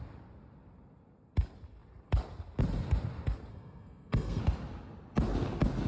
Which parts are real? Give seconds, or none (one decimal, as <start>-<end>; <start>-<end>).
0.0-3.5; 4.4-5.9